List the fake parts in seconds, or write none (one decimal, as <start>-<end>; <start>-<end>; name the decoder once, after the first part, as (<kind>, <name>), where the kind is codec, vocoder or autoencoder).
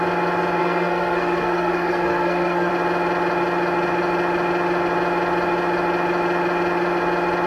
0.6-2.7 (codec, SNAC)